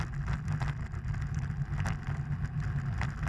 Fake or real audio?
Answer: real